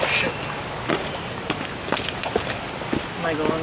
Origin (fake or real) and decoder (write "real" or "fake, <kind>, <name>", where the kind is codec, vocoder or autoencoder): real